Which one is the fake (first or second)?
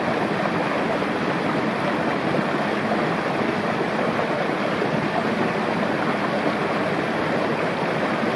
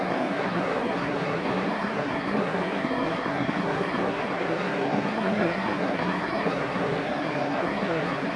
second